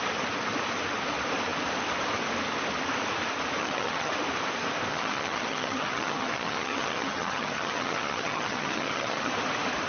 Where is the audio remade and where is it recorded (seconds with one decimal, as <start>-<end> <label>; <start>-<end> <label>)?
0.0-3.6 recorded; 3.6-4.1 remade; 4.1-4.9 recorded; 4.9-9.3 remade; 9.3-9.9 recorded